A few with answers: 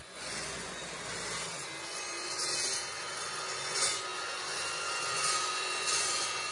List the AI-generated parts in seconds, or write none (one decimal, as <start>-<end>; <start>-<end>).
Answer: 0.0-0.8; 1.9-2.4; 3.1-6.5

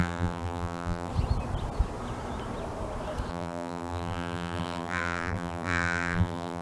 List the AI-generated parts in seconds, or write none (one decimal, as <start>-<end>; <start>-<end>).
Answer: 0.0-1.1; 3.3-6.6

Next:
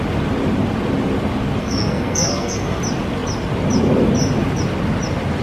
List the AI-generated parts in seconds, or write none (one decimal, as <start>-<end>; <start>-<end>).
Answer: 1.6-2.8

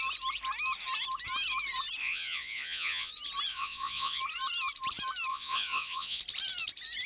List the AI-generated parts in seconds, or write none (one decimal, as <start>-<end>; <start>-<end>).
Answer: 2.0-3.1; 3.5-4.2; 5.3-6.2

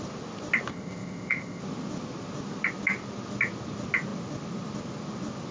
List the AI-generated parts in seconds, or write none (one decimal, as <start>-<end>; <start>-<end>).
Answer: 0.7-1.6